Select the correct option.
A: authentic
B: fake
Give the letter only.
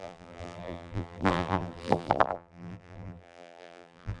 B